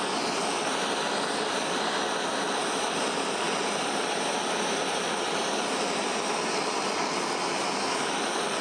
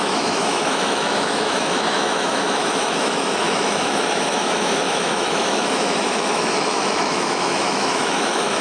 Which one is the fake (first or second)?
second